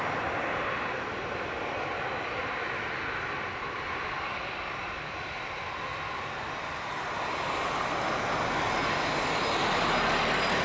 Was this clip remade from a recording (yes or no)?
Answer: no